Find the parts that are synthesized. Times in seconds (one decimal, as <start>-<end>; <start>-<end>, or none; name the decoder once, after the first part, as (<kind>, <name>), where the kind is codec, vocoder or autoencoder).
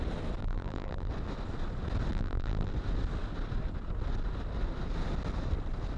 0.4-1.1 (vocoder, BigVGAN v2); 2.1-2.7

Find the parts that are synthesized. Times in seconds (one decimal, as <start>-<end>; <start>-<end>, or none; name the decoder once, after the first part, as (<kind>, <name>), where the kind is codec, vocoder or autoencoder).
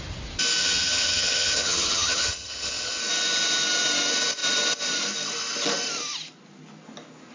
0.6-3.0 (vocoder, HiFi-GAN)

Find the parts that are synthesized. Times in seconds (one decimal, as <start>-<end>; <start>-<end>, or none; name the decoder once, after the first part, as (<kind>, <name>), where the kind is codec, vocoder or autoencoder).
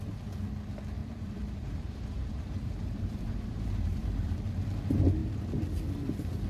1.0-4.4 (vocoder, BigVGAN v2)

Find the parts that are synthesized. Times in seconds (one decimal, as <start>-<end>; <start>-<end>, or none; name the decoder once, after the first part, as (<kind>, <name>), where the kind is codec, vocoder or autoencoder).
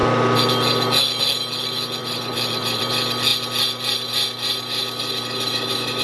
2.0-2.8 (vocoder, Vocos)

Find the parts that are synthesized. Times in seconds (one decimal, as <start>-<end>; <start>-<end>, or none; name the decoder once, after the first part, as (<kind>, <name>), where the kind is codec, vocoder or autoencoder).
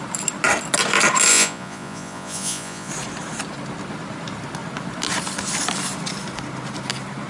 1.3-2.9 (vocoder, Vocos)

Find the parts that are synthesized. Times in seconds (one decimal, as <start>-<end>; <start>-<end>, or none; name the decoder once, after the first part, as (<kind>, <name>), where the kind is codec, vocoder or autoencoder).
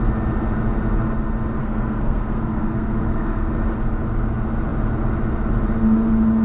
1.6-3.5 (codec, SNAC)